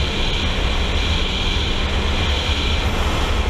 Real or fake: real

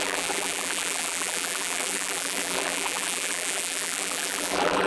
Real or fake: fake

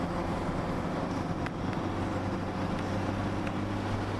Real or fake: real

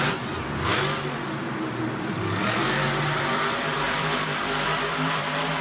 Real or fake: fake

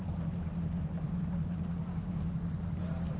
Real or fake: fake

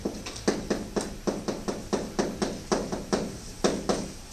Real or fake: real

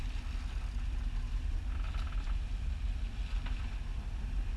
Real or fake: real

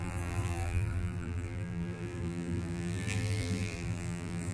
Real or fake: fake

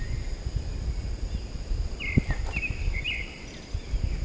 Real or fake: real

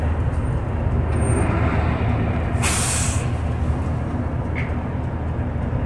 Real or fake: real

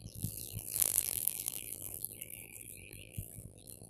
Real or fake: fake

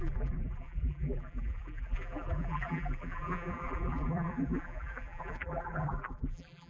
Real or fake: fake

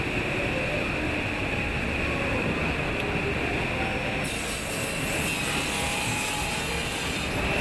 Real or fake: real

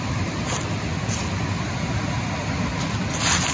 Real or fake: real